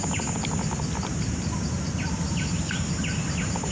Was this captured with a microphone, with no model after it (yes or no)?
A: yes